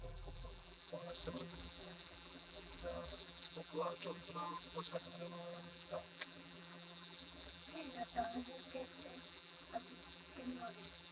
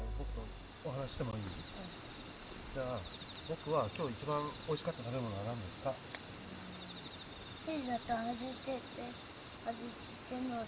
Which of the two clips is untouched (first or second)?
second